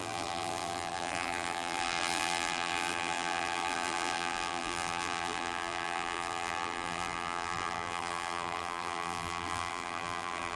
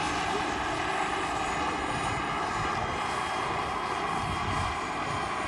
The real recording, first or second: second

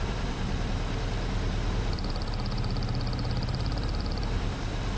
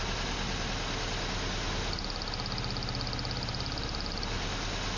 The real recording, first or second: second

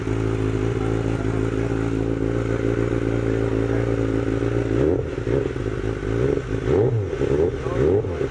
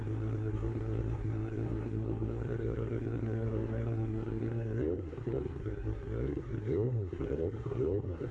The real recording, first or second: first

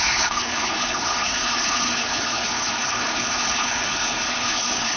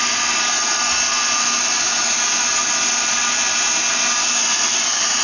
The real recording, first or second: second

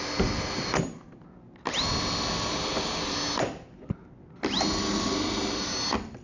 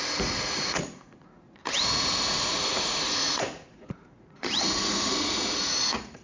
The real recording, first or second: first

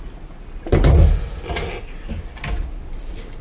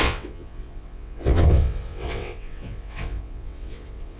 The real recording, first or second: first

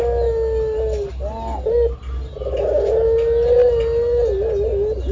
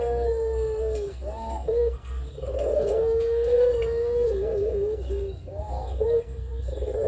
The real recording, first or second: first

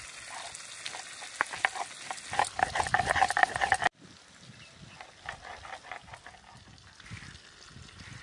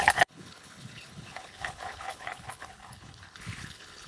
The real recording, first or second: first